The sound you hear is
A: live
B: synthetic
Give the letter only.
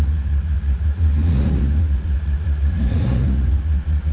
B